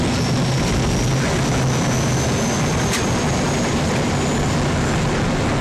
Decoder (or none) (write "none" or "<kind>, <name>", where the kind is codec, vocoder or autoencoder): none